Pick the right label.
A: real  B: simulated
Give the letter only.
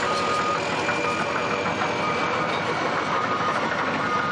A